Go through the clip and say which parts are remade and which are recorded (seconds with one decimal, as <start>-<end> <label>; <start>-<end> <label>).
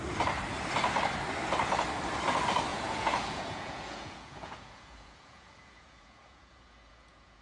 0.0-2.7 recorded; 2.7-7.4 remade